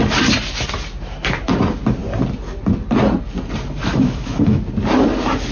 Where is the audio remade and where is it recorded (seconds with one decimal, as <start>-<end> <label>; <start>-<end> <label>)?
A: 0.0-3.9 recorded; 3.9-4.6 remade; 4.6-5.5 recorded